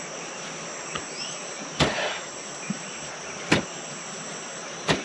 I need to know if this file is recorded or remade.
remade